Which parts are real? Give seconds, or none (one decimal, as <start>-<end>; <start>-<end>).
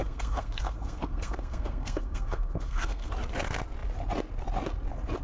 3.1-5.2